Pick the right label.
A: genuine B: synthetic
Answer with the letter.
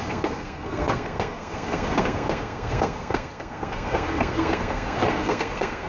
B